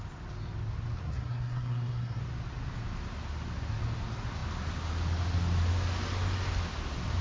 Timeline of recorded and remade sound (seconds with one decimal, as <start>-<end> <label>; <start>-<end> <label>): 0.0-1.0 recorded; 1.0-2.2 remade; 2.2-7.2 recorded

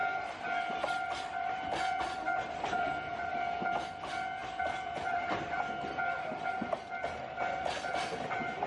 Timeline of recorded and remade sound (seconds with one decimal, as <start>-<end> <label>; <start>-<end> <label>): 0.0-8.7 recorded

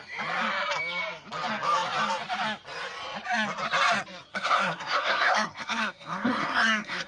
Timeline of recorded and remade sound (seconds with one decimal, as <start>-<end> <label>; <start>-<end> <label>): 0.0-4.3 recorded; 4.3-7.1 remade

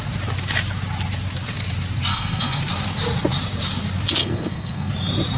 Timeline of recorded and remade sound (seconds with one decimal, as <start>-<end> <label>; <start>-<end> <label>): 0.0-2.1 recorded; 2.1-2.6 remade; 2.6-4.2 recorded; 4.2-4.9 remade; 4.9-5.4 recorded